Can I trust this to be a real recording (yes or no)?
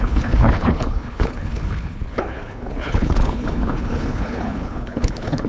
no